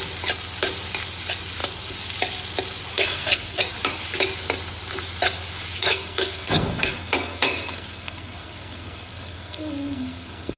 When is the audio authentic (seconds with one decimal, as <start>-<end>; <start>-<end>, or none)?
0.0-2.9; 3.6-5.8